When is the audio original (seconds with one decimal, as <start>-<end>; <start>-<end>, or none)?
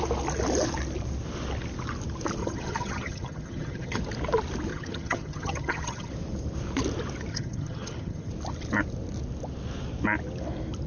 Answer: 0.0-2.4; 4.0-4.7; 6.1-7.3; 8.3-10.9